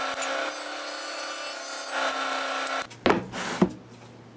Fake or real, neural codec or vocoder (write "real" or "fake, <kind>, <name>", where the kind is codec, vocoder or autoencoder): real